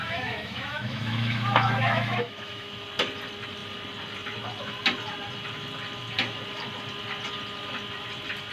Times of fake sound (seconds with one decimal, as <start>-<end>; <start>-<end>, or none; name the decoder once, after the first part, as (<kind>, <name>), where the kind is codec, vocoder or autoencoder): 0.0-2.8 (autoencoder, DAC-VAE)